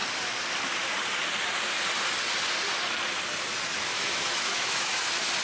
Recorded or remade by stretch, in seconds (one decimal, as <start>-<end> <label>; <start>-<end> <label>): 0.0-3.9 recorded; 3.9-4.9 remade; 4.9-5.4 recorded